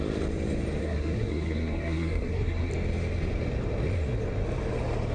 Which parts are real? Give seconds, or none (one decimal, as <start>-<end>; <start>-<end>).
0.0-0.8; 2.7-5.1